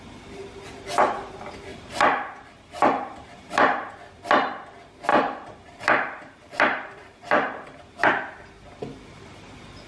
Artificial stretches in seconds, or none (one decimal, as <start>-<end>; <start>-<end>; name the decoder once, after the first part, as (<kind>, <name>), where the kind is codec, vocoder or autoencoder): 1.7-3.9 (vocoder, BigVGAN v2); 5.1-7.8